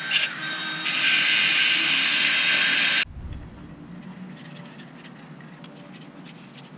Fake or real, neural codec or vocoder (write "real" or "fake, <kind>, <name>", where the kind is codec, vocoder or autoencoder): real